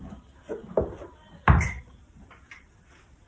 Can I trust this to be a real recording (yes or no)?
yes